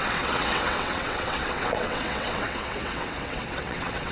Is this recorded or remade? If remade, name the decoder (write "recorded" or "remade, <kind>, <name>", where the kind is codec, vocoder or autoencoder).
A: remade, vocoder, WaveNeXt